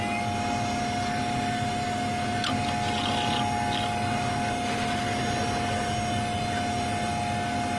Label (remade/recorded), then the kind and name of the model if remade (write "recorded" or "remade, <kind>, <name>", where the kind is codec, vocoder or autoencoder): recorded